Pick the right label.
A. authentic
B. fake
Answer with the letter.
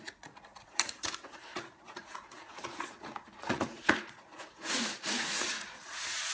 B